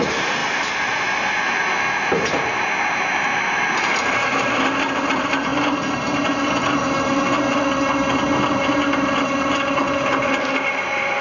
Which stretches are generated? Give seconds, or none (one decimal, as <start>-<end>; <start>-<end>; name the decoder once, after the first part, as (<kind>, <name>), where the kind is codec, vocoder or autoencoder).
0.0-0.4 (vocoder, BigVGAN v2); 2.3-5.5; 8.6-11.2